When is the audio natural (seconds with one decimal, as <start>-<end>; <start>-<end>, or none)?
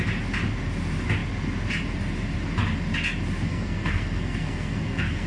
0.0-3.5